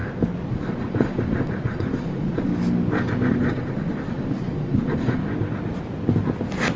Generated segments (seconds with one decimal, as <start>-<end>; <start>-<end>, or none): 0.5-2.5; 3.3-5.2